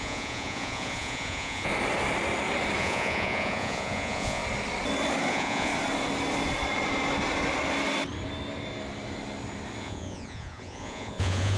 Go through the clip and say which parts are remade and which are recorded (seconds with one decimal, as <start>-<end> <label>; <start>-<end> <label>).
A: 0.0-1.7 remade; 1.7-2.8 recorded; 2.8-4.4 remade; 4.4-5.3 recorded; 5.3-5.7 remade; 5.7-9.8 recorded; 9.8-11.6 remade